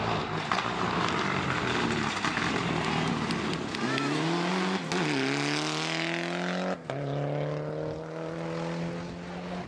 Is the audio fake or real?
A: real